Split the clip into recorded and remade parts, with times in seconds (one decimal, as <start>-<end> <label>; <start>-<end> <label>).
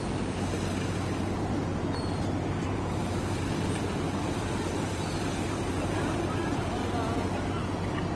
0.0-0.5 remade; 0.5-3.0 recorded; 3.0-6.8 remade; 6.8-8.2 recorded